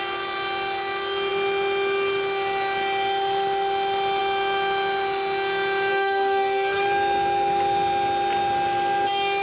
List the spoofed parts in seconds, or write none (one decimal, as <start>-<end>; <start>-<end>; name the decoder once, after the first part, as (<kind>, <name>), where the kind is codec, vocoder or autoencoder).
5.9-6.8 (codec, DAC)